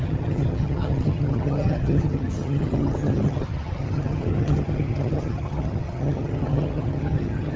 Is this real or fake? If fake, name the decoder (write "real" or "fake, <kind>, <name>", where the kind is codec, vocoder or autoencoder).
fake, vocoder, HiFi-GAN